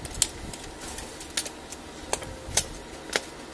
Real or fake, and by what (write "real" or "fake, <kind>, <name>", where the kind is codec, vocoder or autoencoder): real